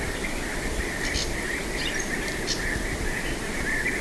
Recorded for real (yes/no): yes